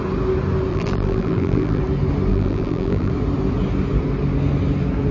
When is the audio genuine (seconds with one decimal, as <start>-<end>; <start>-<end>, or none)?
0.0-0.7; 1.8-2.3; 3.1-5.1